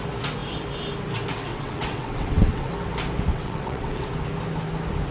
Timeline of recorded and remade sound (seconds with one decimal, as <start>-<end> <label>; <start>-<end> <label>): 0.0-1.5 recorded; 1.5-2.7 remade; 2.7-3.3 recorded; 3.3-4.1 remade; 4.1-5.1 recorded